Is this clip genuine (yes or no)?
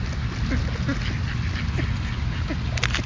yes